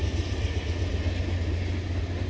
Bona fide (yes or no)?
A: yes